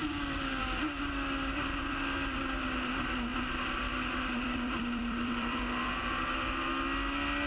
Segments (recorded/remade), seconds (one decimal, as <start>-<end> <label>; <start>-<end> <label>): 0.0-0.6 remade; 0.6-3.3 recorded; 3.3-6.7 remade; 6.7-7.5 recorded